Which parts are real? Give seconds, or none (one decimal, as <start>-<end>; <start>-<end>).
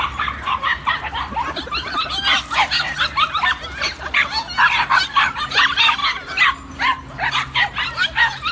0.0-8.5